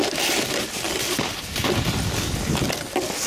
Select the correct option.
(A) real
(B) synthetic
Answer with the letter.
A